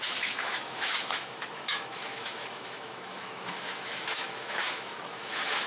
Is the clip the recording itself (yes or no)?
no